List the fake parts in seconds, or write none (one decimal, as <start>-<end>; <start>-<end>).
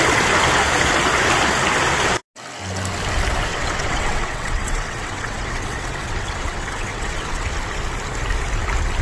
3.5-7.5